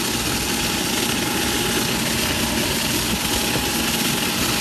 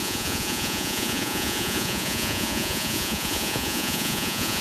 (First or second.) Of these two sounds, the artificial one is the second